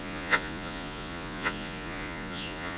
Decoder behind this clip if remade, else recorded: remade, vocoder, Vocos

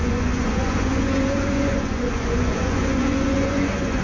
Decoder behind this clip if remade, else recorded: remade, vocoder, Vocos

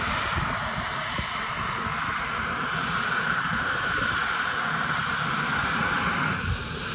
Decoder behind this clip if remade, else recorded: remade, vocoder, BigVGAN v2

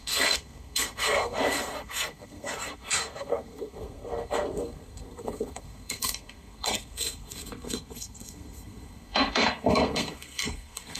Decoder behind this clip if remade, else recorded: remade, codec, SNAC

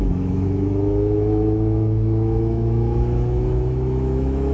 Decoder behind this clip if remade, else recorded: remade, autoencoder, DAC-VAE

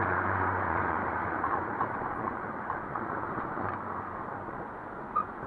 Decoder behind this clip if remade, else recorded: remade, vocoder, Vocos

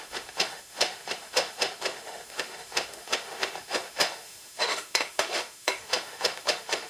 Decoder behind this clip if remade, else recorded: remade, autoencoder, DAC-VAE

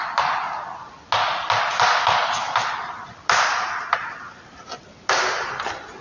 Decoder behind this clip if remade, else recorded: recorded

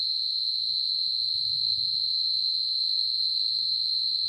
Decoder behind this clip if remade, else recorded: remade, vocoder, Vocos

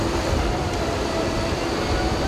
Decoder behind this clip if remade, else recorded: remade, vocoder, BigVGAN v2